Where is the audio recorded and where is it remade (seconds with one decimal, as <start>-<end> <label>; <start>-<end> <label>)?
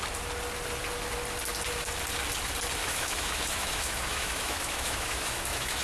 0.0-2.8 recorded; 2.8-5.8 remade